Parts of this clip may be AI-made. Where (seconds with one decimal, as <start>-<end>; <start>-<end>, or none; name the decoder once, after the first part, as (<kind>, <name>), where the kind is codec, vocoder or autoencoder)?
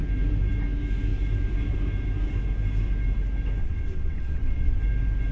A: 3.6-4.8 (vocoder, WaveNeXt)